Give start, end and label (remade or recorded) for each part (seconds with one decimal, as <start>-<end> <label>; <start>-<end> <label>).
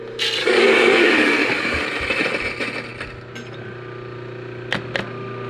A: 0.0-0.4 recorded; 0.4-1.8 remade; 1.8-5.5 recorded